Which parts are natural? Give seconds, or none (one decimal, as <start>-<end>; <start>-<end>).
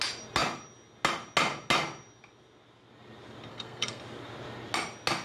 0.0-3.5; 4.0-5.2